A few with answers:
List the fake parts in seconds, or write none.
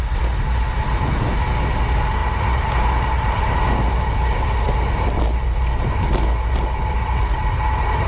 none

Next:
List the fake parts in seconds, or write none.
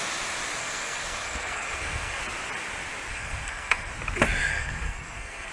0.6-2.2 (codec, SNAC); 3.1-3.9; 4.5-5.5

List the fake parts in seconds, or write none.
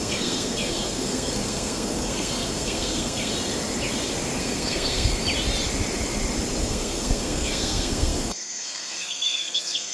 0.0-3.3 (codec, SNAC); 4.4-5.2; 6.6-9.9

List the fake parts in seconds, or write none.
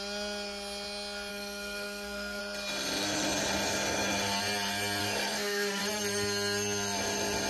1.3-2.4 (codec, SNAC); 5.0-5.8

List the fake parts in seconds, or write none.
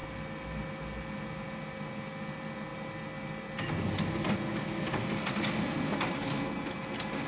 none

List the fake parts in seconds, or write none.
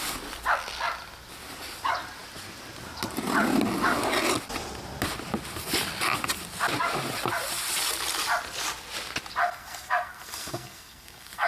9.4-11.5 (codec, SNAC)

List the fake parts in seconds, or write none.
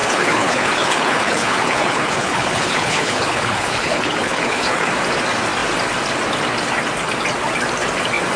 0.0-4.9 (codec, HILCodec)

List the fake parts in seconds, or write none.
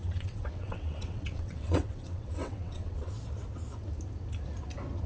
0.0-3.1 (vocoder, WaveNeXt)